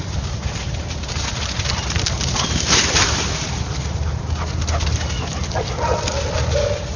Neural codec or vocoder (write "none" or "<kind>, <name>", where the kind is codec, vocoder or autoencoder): none